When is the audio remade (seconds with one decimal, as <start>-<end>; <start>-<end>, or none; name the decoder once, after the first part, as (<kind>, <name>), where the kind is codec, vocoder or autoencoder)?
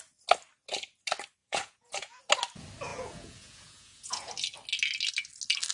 1.4-2.2 (vocoder, Vocos); 2.9-4.3